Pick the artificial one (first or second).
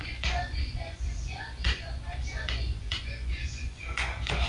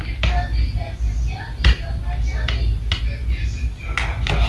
first